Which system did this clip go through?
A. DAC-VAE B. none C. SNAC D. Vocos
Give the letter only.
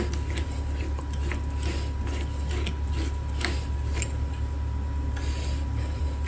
B